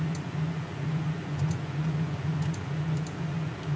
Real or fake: fake